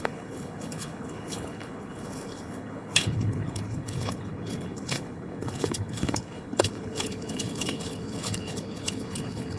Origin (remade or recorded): remade